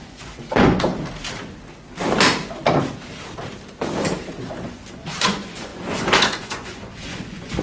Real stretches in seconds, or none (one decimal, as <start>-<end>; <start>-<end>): 0.9-4.5